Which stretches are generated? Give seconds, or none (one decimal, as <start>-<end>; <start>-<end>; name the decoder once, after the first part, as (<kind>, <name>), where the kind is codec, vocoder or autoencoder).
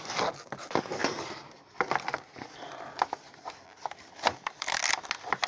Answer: 0.0-1.0 (codec, DAC); 4.3-4.8